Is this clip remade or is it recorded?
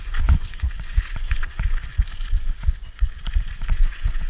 remade